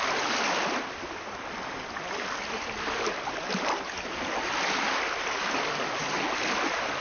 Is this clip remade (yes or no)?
no